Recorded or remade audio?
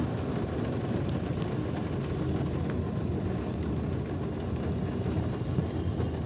recorded